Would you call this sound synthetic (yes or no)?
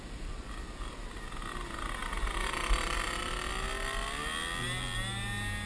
no